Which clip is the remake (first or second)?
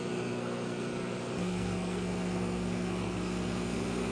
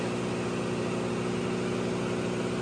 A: first